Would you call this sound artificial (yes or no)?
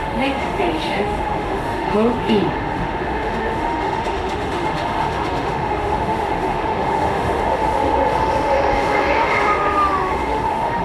yes